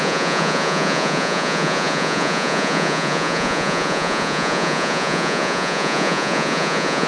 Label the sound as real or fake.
fake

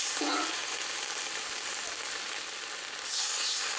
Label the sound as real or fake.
real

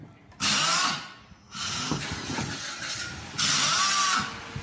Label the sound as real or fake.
real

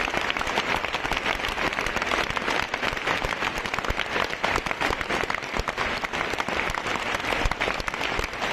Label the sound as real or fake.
fake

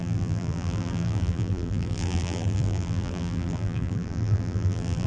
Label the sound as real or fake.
fake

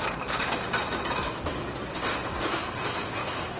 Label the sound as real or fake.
real